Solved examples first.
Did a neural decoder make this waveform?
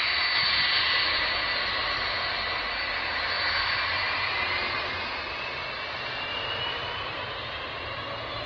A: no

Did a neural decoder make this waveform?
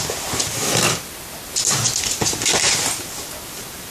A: no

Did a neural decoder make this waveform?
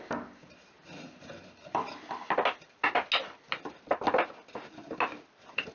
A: no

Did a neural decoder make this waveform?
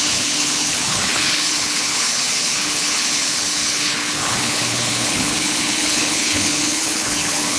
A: yes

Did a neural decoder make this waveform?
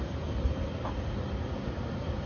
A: no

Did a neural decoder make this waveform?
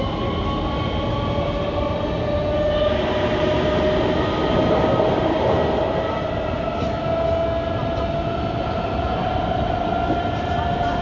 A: no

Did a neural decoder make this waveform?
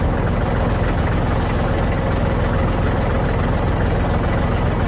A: no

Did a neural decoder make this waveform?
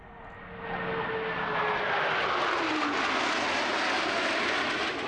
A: no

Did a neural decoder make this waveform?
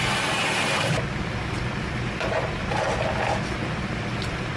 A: no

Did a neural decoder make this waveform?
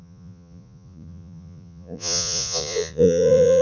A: yes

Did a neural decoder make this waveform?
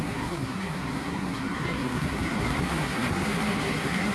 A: yes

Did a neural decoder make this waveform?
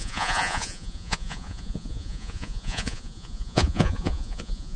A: yes